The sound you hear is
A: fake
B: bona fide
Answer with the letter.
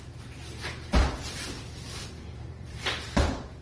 A